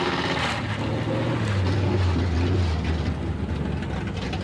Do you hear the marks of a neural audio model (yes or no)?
no